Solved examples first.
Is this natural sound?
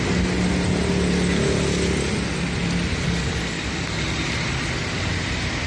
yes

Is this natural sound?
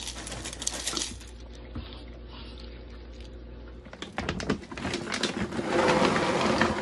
yes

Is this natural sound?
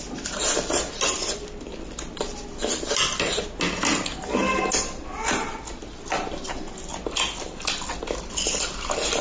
yes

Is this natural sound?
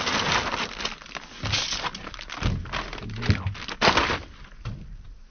yes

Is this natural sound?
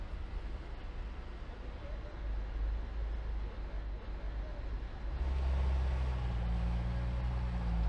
yes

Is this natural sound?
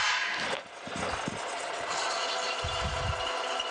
yes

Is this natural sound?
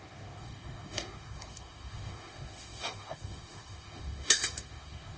no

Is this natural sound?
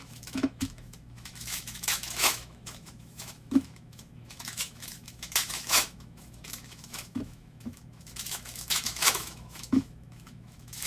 no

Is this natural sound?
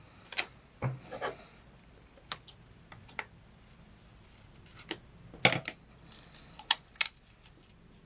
yes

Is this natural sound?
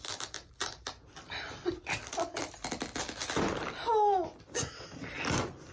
yes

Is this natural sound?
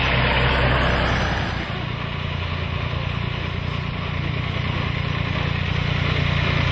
yes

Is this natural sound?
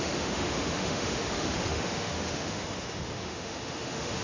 no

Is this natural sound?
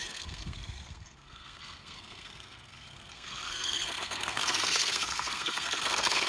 no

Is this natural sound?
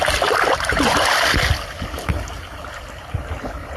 yes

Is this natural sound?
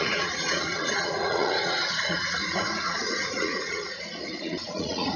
no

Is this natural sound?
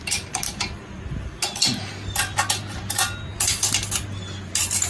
yes